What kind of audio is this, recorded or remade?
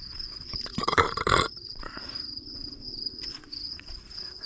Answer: remade